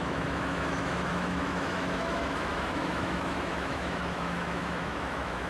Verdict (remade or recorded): remade